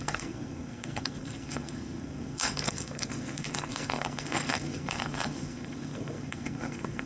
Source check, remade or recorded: remade